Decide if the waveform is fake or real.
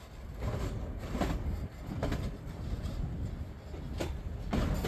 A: real